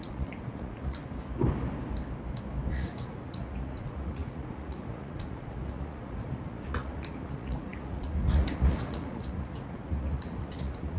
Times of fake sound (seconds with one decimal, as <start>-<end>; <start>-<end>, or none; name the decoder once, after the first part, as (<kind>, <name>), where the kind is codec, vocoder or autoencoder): 0.0-1.0 (vocoder, Vocos); 2.7-11.0